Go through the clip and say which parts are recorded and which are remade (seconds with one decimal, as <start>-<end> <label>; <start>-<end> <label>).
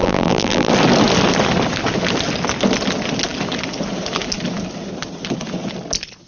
0.0-0.7 remade; 0.7-6.3 recorded